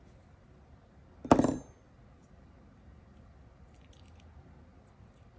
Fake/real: real